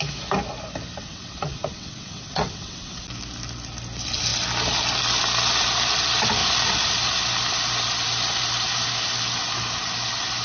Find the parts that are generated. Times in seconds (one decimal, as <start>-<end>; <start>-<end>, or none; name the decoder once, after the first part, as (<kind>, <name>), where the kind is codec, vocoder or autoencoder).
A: 1.0-3.0 (vocoder, WaveNeXt)